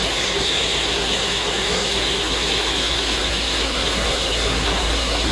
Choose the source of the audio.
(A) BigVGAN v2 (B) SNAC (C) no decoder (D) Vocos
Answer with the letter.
B